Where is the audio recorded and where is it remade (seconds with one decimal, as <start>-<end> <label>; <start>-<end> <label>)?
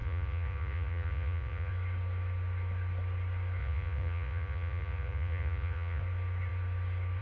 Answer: 0.0-1.7 remade; 1.7-3.6 recorded; 3.6-6.0 remade; 6.0-7.2 recorded